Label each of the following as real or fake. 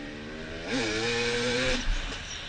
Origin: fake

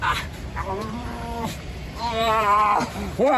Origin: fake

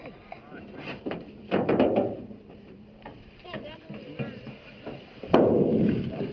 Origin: fake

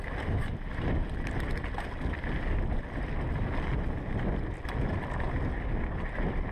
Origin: real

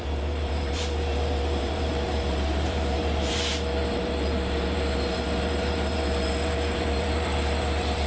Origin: fake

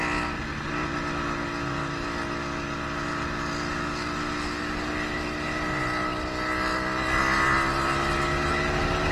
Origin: real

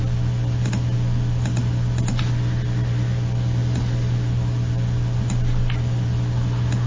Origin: real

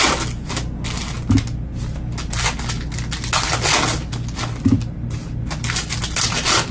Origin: real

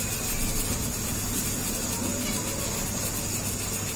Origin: real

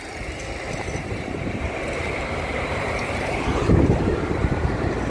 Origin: fake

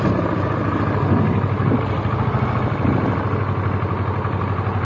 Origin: real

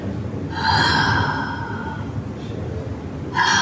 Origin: real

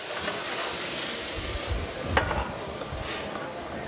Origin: real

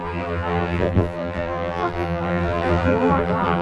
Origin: fake